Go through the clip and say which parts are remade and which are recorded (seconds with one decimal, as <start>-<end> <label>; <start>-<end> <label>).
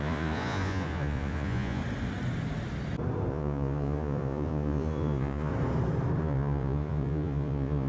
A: 0.0-1.8 remade; 1.8-3.3 recorded; 3.3-5.5 remade; 5.5-6.2 recorded; 6.2-7.9 remade